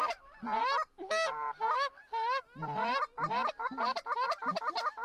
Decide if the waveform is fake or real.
real